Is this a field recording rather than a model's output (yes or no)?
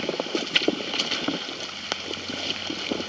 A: yes